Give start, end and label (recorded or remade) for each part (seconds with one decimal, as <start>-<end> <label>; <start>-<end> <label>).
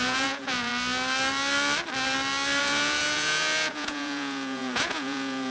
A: 0.0-0.7 remade; 0.7-2.6 recorded; 2.6-5.5 remade